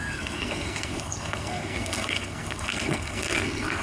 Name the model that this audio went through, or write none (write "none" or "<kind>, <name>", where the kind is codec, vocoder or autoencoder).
codec, SNAC